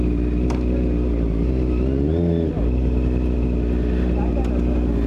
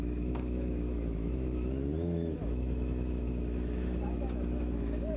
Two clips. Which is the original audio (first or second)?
first